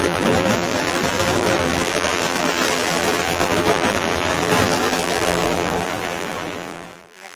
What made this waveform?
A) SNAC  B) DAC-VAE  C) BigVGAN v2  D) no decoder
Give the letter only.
C